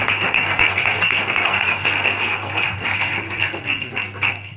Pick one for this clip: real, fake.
fake